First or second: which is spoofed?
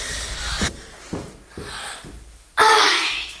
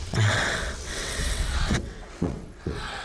second